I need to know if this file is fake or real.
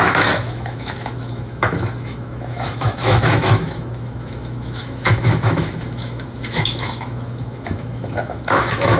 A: fake